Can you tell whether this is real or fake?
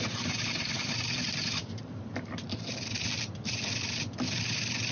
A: real